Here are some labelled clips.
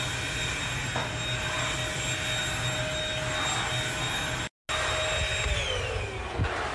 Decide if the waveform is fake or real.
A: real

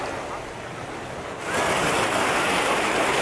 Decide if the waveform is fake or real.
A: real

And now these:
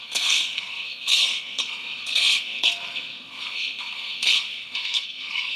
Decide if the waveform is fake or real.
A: fake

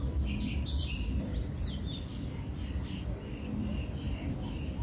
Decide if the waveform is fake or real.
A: real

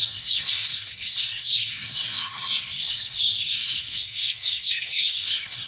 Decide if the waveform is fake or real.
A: fake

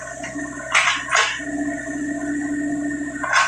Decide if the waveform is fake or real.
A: real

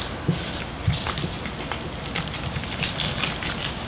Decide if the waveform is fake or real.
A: real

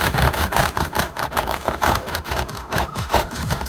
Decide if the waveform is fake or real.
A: fake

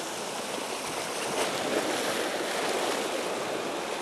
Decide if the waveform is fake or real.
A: real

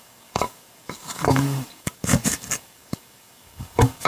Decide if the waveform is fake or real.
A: fake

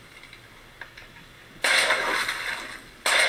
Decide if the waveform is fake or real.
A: real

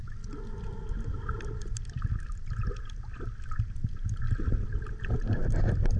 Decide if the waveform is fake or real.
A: real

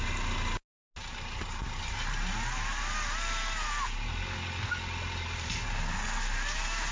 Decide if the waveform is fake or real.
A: real